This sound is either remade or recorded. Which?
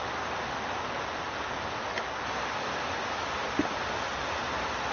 recorded